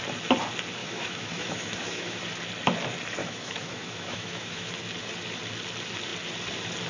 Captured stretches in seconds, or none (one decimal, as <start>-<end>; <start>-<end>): 0.0-0.8; 2.2-3.2; 4.7-6.9

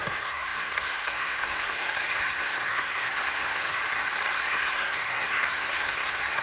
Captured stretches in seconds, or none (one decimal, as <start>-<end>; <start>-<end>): 3.8-4.3

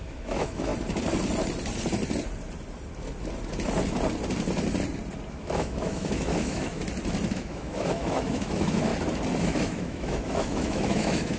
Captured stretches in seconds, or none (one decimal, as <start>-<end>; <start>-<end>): 0.7-5.3; 6.8-7.3; 8.9-9.4

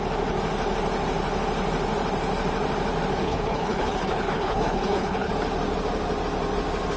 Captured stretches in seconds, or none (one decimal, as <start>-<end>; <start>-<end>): 0.0-3.2; 5.3-7.0

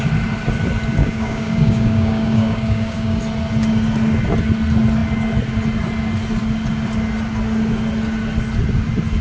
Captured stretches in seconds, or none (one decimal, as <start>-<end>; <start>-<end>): 0.0-1.0; 3.2-9.2

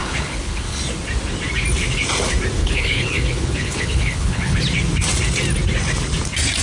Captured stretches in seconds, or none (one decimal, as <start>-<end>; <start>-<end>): 0.8-2.6; 4.6-6.6

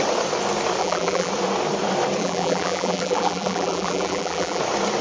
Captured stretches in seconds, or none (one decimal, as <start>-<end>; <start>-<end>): 0.0-0.8; 1.3-2.2; 4.6-5.0